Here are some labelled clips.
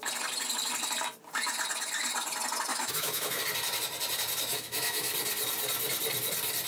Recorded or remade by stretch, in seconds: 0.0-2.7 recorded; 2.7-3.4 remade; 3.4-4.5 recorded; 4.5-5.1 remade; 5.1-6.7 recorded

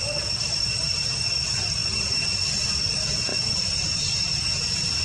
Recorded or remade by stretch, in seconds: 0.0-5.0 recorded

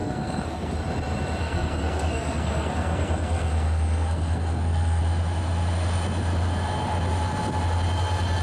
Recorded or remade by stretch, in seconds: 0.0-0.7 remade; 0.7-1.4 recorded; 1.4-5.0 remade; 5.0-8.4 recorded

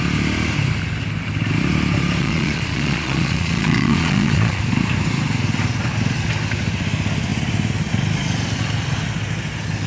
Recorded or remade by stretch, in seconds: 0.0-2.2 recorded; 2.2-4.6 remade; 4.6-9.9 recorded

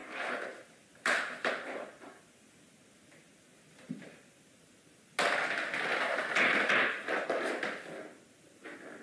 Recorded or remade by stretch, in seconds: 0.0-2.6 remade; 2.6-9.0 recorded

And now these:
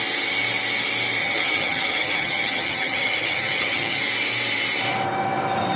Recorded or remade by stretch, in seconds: 0.0-1.2 recorded; 1.2-4.0 remade; 4.0-5.8 recorded